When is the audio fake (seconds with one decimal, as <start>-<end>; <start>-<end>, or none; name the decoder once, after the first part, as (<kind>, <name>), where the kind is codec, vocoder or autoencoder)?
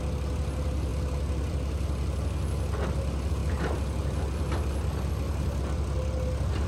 none